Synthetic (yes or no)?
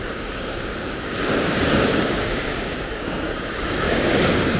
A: yes